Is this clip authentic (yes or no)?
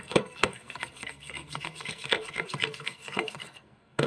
no